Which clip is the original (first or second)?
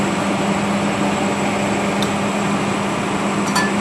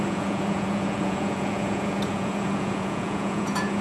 first